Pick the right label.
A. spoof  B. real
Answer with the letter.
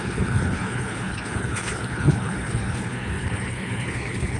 A